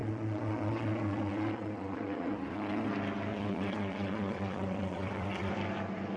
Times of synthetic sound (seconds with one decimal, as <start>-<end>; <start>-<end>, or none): 0.0-2.9; 3.3-5.5

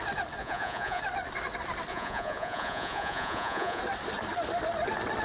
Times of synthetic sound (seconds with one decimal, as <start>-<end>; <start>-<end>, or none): 0.4-1.0; 1.9-3.8

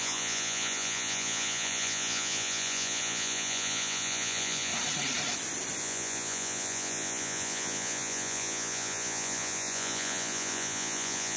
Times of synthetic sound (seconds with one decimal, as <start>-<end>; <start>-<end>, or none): 0.0-4.7; 5.8-11.4

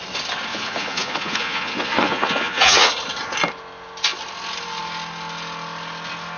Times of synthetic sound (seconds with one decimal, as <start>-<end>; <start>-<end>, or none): 0.5-2.9

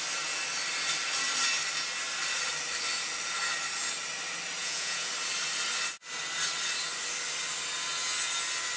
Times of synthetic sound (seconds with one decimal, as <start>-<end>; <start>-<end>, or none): 4.6-5.1

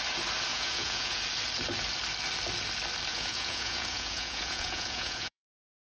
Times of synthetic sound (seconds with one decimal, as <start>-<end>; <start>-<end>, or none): 0.5-1.2; 3.1-5.8

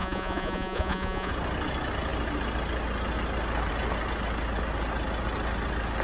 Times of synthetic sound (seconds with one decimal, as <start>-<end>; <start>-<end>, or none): 0.0-1.3

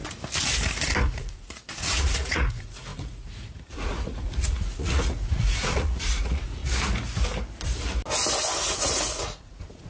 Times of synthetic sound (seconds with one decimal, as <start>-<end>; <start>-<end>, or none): 1.0-6.6; 8.6-9.9